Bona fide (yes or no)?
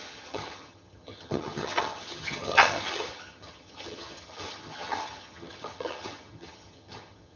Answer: no